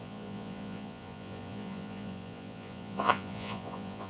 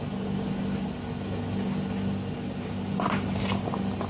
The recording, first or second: second